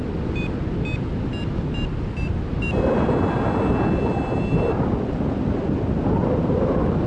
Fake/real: real